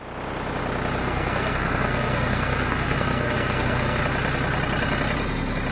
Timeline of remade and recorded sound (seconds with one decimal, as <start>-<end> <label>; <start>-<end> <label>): 0.0-1.0 recorded; 1.0-4.0 remade; 4.0-5.7 recorded